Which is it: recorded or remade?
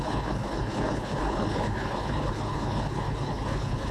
remade